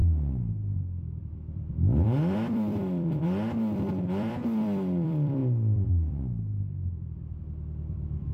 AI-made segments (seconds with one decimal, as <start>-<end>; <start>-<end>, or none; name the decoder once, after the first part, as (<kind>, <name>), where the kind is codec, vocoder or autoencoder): 1.7-8.3 (vocoder, BigVGAN v2)